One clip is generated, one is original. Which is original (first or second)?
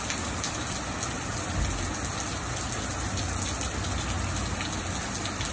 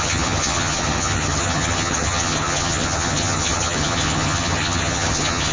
first